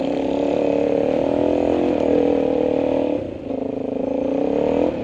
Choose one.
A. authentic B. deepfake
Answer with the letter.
A